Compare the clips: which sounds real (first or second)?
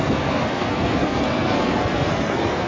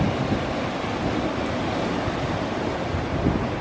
second